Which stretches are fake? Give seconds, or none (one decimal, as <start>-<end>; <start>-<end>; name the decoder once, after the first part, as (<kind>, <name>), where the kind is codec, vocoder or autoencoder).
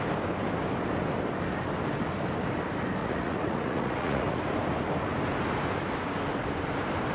3.0-4.4 (vocoder, Vocos)